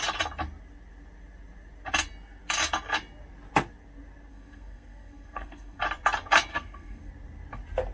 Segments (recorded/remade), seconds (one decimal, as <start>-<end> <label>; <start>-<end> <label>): 0.0-4.3 recorded; 4.3-5.8 remade; 5.8-6.5 recorded; 6.5-7.1 remade; 7.1-7.9 recorded